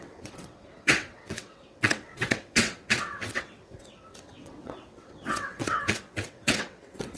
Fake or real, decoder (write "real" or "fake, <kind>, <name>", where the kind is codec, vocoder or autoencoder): fake, vocoder, WaveNeXt